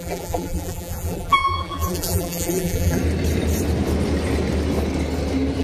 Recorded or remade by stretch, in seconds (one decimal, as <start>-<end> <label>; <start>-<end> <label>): 0.0-3.0 remade; 3.0-5.6 recorded